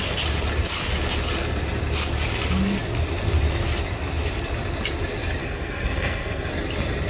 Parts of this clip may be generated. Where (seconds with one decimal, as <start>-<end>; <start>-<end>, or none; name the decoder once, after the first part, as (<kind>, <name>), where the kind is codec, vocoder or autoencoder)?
5.4-6.5 (codec, SNAC)